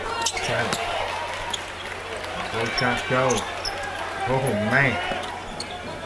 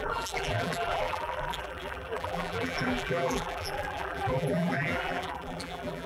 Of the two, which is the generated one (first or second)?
second